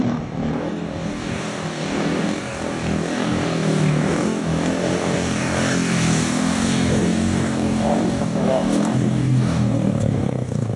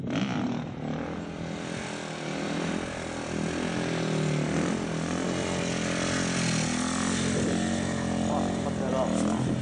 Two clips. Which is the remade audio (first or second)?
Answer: first